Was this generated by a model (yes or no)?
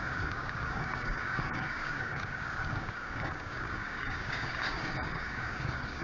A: yes